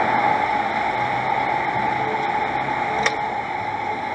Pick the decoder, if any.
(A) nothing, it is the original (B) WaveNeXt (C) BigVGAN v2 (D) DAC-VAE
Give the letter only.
A